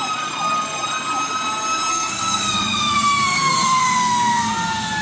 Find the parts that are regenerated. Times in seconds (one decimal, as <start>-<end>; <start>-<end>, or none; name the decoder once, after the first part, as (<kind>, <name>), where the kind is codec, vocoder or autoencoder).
1.9-4.5 (codec, SNAC)